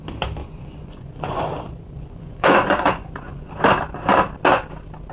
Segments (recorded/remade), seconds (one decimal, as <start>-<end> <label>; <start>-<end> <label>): 0.0-0.4 recorded; 0.4-3.5 remade; 3.5-5.1 recorded